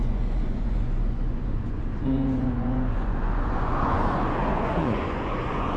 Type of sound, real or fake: fake